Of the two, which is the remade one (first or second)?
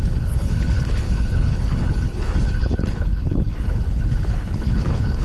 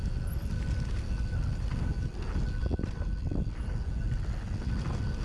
first